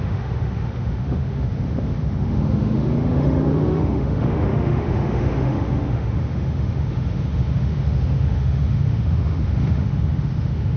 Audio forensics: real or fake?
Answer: fake